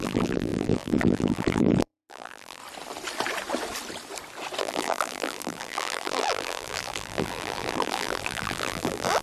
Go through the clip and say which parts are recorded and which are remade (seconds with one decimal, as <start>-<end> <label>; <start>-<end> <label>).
0.0-2.6 remade; 2.6-4.6 recorded; 4.6-9.2 remade